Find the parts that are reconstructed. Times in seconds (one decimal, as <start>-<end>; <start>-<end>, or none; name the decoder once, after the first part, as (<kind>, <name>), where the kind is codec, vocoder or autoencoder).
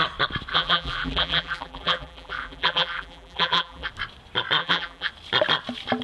0.5-3.9 (vocoder, BigVGAN v2); 4.6-5.1